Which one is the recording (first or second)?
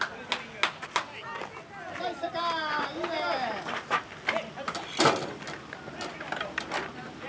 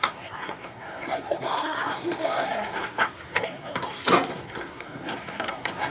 first